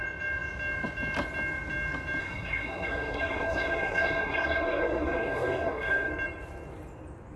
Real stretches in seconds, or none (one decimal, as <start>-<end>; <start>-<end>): 0.0-2.2; 6.1-7.4